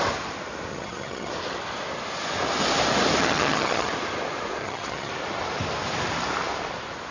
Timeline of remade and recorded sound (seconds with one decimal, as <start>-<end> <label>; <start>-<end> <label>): 0.0-0.7 recorded; 0.7-1.3 remade; 1.3-3.2 recorded; 3.2-3.9 remade; 3.9-4.6 recorded; 4.6-5.1 remade; 5.1-7.1 recorded